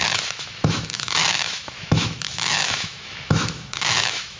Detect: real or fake fake